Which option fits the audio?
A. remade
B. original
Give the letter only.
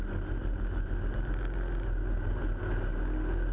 B